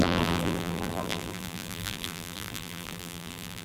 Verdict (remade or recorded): remade